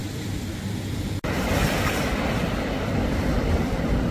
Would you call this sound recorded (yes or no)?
yes